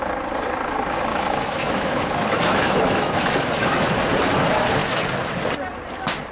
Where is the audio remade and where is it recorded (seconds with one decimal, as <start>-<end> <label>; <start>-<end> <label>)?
0.0-1.1 recorded; 1.1-3.9 remade; 3.9-6.3 recorded

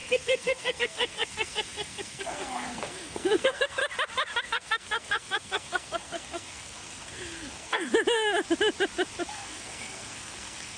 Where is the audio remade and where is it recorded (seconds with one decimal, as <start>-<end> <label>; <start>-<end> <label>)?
0.0-3.8 remade; 3.8-4.4 recorded; 4.4-7.9 remade; 7.9-9.3 recorded; 9.3-10.8 remade

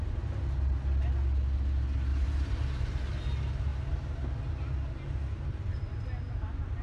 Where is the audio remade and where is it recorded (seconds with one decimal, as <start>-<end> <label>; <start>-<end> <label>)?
0.0-2.1 recorded; 2.1-3.0 remade; 3.0-3.7 recorded; 3.7-4.3 remade; 4.3-6.8 recorded

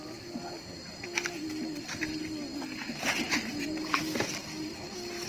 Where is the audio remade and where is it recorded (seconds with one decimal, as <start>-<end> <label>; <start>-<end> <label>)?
0.0-5.3 recorded